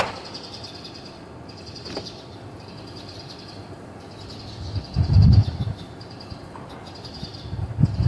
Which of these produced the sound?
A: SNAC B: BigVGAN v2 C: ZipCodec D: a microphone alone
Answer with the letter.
B